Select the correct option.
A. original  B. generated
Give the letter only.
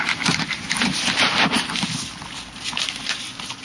A